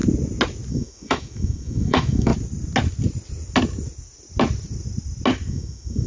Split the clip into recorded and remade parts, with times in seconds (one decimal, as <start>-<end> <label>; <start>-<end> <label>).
0.0-0.7 recorded; 0.7-2.3 remade; 2.3-5.5 recorded; 5.5-6.1 remade

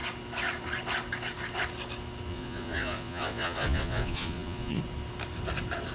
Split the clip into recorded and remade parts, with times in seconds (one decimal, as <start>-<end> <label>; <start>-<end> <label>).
0.0-2.3 recorded; 2.3-4.8 remade; 4.8-5.9 recorded